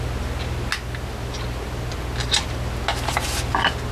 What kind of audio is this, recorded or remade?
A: recorded